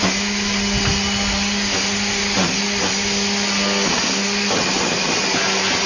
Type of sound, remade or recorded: recorded